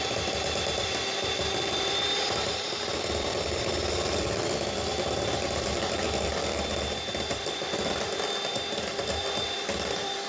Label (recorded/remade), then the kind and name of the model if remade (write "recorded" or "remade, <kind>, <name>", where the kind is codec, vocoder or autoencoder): remade, vocoder, BigVGAN v2